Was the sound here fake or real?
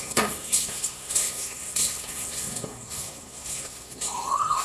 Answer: fake